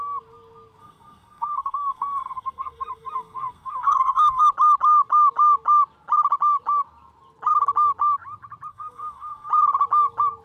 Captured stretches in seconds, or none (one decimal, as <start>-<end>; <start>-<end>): 0.0-0.8; 4.4-8.7; 9.5-10.4

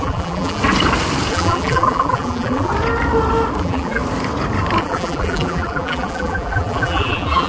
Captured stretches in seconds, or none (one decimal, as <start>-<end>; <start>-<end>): 0.6-1.3; 2.7-3.6; 4.0-4.8